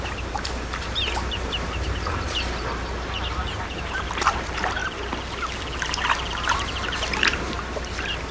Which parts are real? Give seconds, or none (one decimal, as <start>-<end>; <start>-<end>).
4.8-6.3